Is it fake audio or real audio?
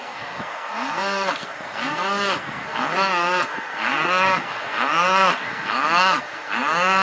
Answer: fake